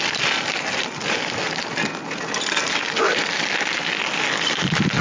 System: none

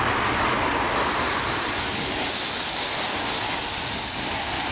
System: none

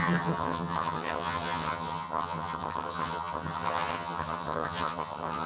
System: vocoder, HiFi-GAN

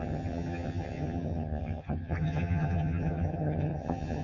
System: vocoder, HiFi-GAN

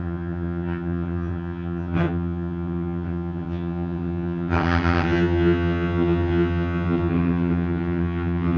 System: vocoder, HiFi-GAN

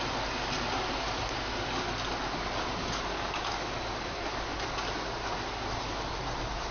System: none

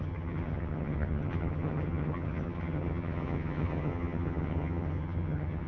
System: vocoder, HiFi-GAN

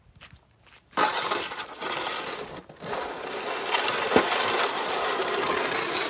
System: none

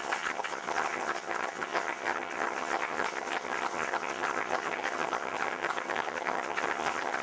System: vocoder, HiFi-GAN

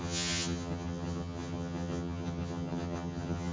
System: vocoder, HiFi-GAN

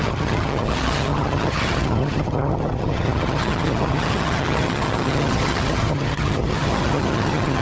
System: vocoder, HiFi-GAN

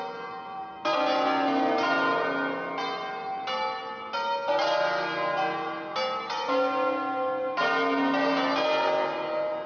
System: none